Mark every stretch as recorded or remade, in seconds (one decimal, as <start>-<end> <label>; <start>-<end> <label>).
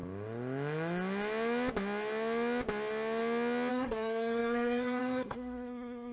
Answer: 0.0-3.7 recorded; 3.7-6.1 remade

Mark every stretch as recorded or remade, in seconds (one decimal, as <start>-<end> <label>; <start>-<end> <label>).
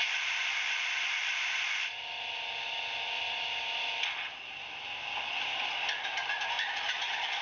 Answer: 0.0-7.4 recorded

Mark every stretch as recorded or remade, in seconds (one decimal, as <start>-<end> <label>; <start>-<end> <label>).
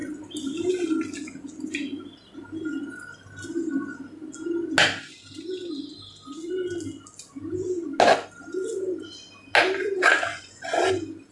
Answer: 0.0-10.3 recorded; 10.3-10.9 remade; 10.9-11.3 recorded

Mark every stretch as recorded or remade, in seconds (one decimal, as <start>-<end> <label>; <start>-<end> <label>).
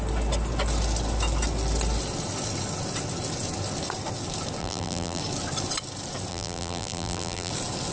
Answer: 0.0-4.6 recorded; 4.6-5.2 remade; 5.2-6.3 recorded; 6.3-7.5 remade; 7.5-7.9 recorded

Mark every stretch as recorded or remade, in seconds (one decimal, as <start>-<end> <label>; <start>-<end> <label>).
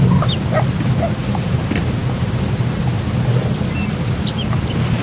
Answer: 0.0-5.0 recorded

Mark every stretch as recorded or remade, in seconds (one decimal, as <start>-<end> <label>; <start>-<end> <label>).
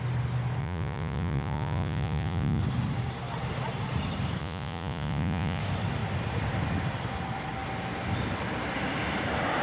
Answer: 0.0-0.6 recorded; 0.6-2.6 remade; 2.6-4.4 recorded; 4.4-5.6 remade; 5.6-9.6 recorded